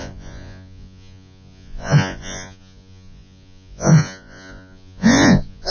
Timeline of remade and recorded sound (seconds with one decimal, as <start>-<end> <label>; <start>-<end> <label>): 0.0-5.7 remade